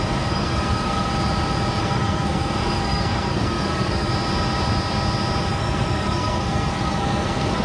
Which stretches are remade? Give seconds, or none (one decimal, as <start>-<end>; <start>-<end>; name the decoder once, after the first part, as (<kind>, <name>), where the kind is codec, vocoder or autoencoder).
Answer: 0.0-1.1 (codec, SNAC); 1.8-4.1; 5.5-7.6